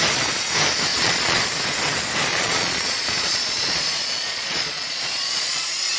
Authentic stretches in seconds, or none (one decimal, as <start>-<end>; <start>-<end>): 0.0-0.9; 1.4-2.3

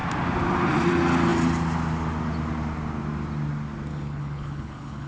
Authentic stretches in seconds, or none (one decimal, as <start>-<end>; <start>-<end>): 0.0-3.9